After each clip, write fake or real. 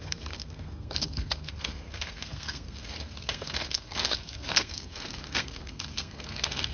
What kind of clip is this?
fake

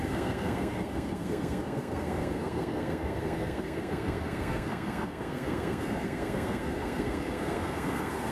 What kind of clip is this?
fake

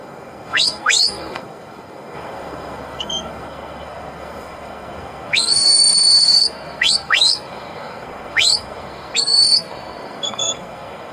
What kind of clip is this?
fake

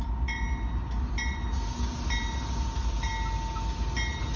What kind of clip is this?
real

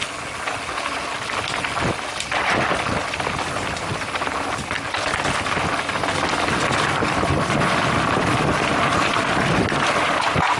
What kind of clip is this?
real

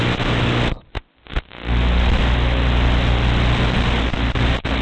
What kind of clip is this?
real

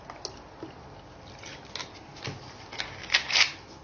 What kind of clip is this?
real